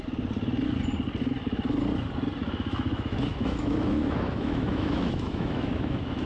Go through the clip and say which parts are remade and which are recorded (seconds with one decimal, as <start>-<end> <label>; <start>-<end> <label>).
0.0-2.4 recorded; 2.4-6.3 remade

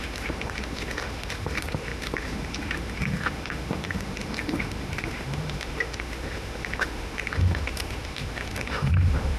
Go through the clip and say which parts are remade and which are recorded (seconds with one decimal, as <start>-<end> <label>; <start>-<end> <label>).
0.0-9.4 remade

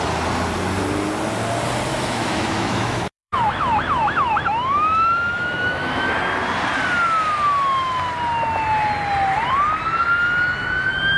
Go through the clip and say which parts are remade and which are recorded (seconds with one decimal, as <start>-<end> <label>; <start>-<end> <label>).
0.0-1.9 recorded; 1.9-6.1 remade; 6.1-11.2 recorded

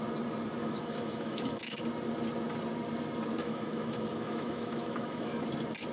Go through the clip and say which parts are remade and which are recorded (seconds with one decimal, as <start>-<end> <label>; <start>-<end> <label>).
0.0-0.6 recorded; 0.6-1.8 remade; 1.8-3.4 recorded; 3.4-5.4 remade; 5.4-5.9 recorded

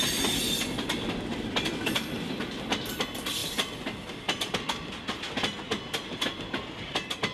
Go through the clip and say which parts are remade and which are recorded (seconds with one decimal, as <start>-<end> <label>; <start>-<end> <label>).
0.0-7.3 recorded

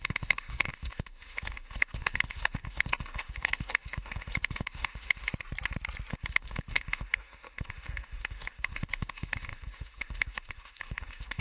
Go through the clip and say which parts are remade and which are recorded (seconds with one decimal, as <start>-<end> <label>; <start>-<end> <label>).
0.0-5.3 remade; 5.3-6.1 recorded; 6.1-11.4 remade